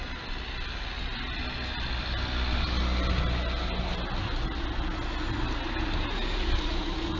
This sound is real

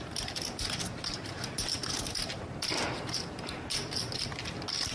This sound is real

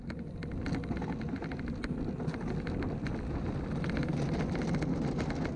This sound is real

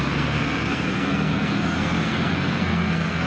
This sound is fake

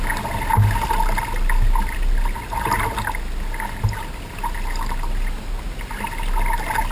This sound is real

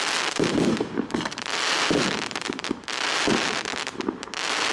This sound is real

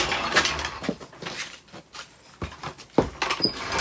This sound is real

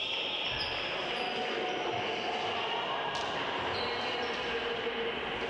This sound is real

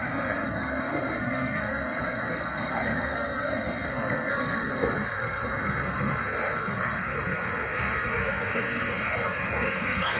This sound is fake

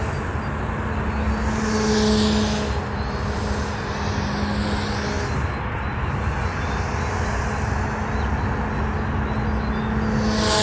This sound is real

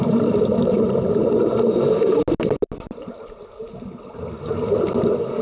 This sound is real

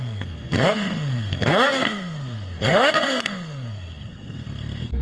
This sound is fake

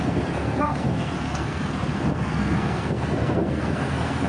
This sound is fake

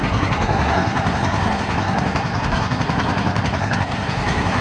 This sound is fake